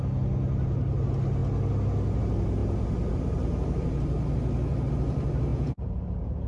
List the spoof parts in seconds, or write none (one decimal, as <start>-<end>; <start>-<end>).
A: 5.5-6.0